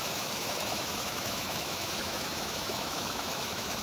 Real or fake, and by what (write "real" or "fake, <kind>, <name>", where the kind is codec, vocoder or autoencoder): fake, autoencoder, DAC-VAE